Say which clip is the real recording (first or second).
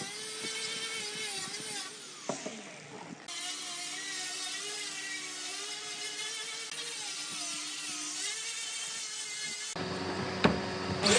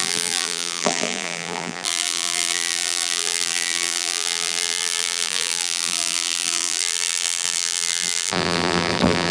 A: first